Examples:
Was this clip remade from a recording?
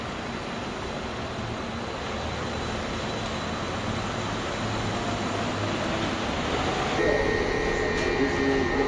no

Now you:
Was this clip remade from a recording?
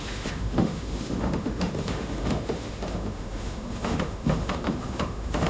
yes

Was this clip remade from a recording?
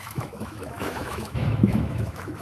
yes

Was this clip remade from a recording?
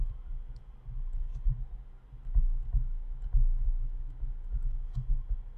no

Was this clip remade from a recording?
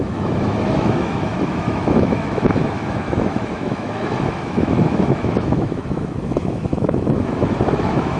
yes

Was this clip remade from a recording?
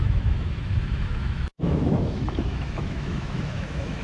yes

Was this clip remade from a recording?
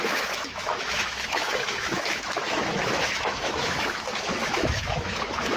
yes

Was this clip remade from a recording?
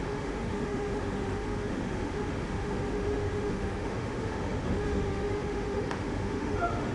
yes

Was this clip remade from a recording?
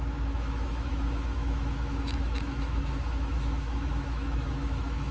yes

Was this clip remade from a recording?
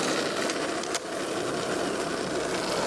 no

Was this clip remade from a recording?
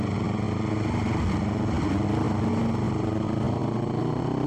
no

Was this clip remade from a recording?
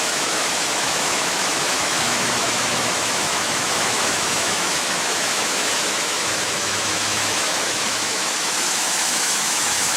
yes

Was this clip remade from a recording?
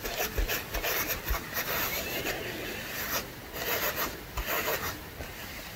no